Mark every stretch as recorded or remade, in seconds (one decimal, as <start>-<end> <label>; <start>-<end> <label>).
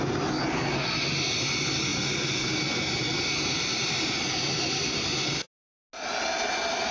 0.0-6.9 recorded